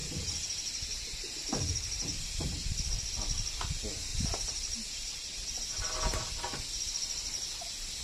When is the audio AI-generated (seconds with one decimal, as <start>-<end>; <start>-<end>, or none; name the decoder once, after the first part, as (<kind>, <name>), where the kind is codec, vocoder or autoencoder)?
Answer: 0.0-2.5 (vocoder, BigVGAN v2); 4.1-6.3

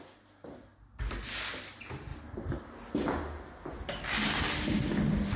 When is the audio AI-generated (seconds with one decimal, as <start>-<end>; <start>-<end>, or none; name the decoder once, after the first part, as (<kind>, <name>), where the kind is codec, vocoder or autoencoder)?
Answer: none

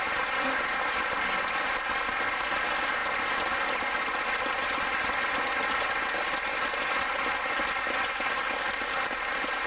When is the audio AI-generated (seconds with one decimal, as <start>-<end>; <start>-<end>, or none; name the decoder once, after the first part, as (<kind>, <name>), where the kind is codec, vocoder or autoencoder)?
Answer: none

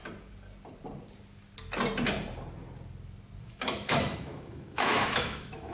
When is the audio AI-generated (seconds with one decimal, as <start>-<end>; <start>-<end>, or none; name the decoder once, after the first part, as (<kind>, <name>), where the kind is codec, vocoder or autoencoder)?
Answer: 3.4-5.7 (autoencoder, DAC-VAE)

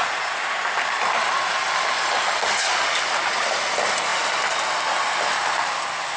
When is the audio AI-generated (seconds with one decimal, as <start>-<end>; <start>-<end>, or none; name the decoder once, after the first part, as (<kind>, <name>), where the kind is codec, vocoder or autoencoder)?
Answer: none

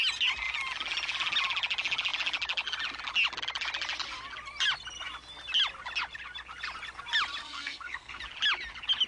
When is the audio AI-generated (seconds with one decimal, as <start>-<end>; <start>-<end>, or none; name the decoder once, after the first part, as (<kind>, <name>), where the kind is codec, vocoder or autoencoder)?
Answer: 7.4-8.2 (codec, SNAC)